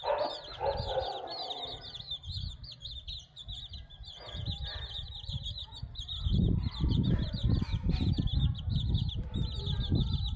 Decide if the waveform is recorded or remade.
remade